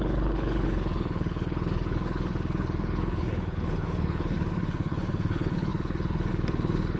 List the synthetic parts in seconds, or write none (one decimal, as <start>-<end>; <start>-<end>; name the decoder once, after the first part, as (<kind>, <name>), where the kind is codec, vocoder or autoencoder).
0.0-7.0 (codec, HILCodec)